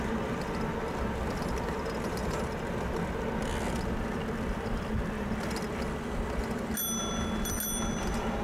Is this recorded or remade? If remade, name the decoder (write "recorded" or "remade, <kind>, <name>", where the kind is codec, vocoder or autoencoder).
recorded